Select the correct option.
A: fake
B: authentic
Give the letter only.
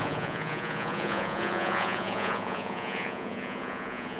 A